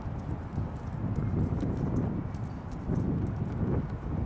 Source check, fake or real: real